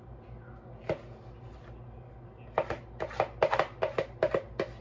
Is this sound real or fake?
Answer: real